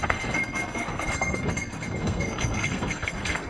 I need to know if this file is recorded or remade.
remade